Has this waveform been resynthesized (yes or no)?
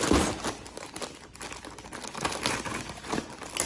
no